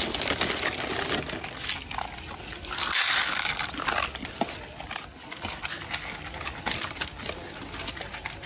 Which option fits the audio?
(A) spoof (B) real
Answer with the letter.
B